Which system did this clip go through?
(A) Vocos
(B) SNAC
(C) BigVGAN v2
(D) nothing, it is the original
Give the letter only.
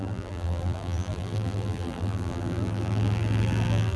C